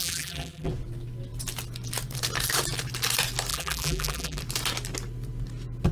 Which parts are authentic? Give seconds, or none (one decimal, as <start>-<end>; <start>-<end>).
0.7-3.5; 4.4-5.9